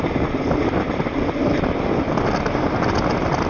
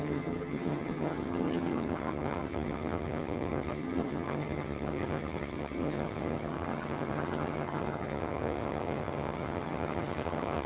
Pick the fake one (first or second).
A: second